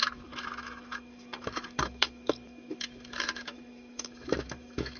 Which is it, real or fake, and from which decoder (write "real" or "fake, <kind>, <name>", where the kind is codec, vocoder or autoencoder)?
fake, autoencoder, DAC-VAE